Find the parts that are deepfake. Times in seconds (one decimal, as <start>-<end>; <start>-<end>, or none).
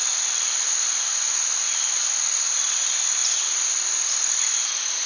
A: none